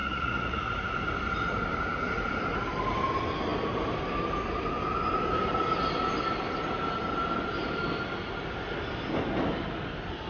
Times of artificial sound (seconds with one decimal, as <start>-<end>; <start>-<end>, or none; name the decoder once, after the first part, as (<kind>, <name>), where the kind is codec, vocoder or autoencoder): 0.0-0.6 (vocoder, Vocos)